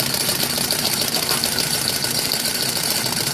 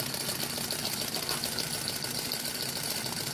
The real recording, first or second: second